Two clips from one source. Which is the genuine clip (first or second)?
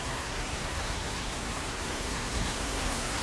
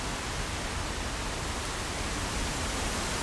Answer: second